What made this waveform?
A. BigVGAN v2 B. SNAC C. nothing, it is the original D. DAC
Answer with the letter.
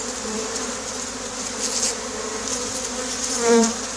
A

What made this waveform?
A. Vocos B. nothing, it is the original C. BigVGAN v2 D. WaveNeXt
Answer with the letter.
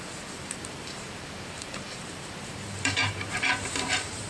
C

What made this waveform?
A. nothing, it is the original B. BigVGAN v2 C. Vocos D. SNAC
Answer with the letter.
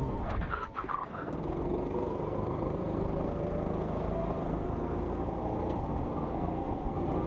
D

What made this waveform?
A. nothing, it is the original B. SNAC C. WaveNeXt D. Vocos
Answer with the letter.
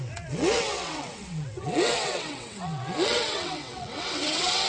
C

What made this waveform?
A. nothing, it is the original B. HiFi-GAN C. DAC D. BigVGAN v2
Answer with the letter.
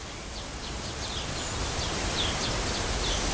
A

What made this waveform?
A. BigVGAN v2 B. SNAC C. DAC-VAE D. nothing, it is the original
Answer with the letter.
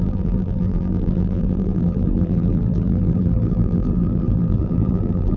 A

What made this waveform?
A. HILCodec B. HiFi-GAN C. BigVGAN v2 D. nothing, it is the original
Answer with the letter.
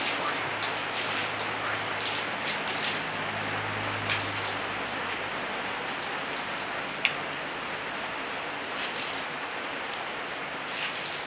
D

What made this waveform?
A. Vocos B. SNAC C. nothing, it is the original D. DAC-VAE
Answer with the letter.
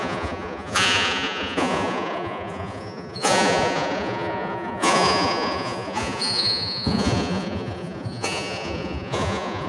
A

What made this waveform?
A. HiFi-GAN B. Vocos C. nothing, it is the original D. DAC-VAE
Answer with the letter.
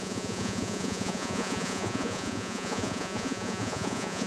B